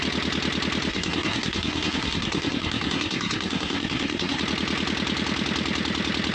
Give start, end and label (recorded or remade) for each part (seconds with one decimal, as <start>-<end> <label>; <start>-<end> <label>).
0.0-0.9 recorded; 0.9-4.4 remade; 4.4-6.3 recorded